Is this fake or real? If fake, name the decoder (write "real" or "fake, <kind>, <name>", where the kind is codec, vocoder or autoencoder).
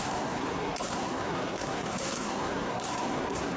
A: fake, codec, SNAC